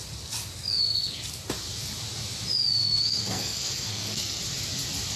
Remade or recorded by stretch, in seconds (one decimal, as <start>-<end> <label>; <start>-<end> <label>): 0.0-0.7 recorded; 0.7-1.2 remade; 1.2-2.8 recorded; 2.8-4.4 remade; 4.4-5.2 recorded